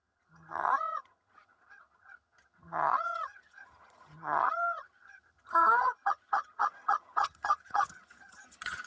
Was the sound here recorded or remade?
remade